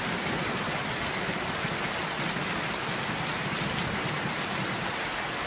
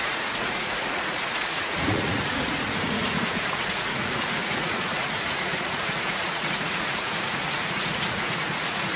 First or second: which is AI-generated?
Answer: second